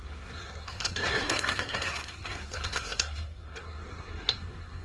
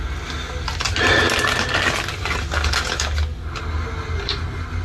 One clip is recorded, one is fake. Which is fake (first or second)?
first